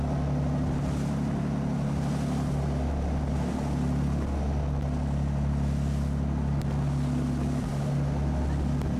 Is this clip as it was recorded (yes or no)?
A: yes